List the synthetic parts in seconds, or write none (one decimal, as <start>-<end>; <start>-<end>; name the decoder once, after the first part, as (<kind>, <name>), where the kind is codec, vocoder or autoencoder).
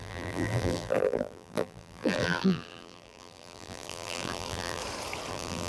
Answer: 0.0-4.8 (vocoder, BigVGAN v2); 5.3-5.7